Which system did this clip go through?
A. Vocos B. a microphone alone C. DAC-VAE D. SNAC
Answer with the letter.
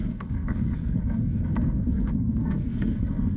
D